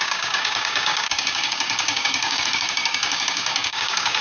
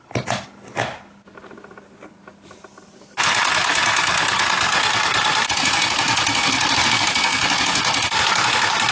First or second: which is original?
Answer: second